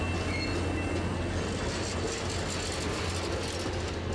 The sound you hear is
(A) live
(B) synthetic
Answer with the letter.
A